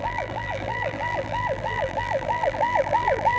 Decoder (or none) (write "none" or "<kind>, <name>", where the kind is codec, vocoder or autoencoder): vocoder, BigVGAN v2